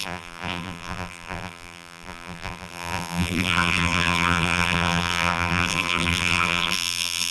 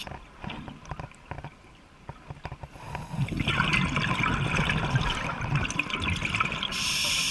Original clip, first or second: second